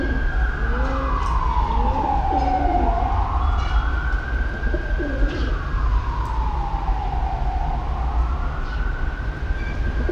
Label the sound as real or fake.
real